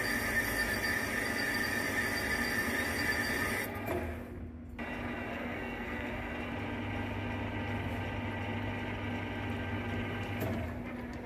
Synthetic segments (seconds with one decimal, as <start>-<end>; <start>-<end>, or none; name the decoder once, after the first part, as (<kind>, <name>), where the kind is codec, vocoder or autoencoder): 5.3-6.3 (codec, SNAC)